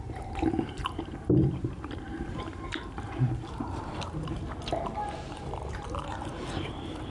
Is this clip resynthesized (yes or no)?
yes